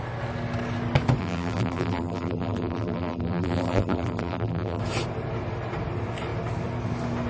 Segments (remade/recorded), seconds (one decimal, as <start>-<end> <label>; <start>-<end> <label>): 0.0-1.2 recorded; 1.2-4.8 remade; 4.8-7.3 recorded